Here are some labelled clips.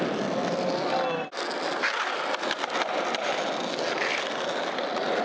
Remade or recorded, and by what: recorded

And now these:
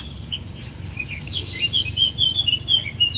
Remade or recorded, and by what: recorded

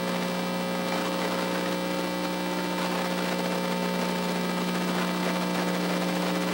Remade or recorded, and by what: recorded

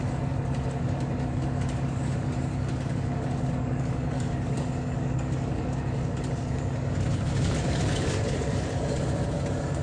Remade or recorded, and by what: remade, codec, DAC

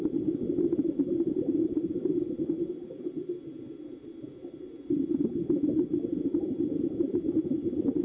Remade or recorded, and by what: recorded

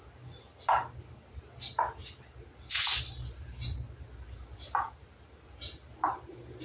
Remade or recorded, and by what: recorded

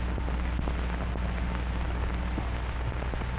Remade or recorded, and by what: recorded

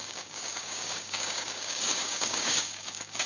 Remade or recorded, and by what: remade, codec, DAC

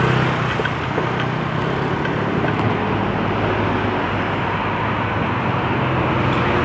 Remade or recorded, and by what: recorded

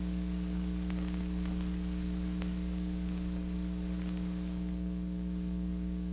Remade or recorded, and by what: remade, codec, DAC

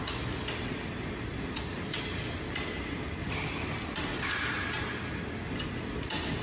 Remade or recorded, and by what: recorded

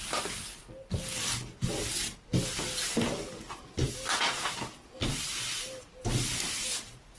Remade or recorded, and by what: recorded